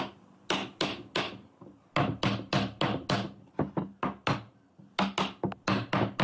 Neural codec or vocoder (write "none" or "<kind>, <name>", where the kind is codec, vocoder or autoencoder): none